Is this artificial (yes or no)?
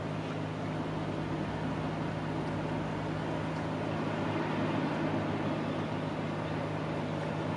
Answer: no